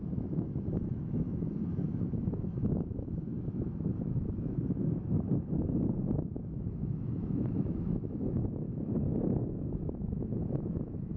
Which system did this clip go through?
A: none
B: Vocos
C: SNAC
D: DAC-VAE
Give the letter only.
D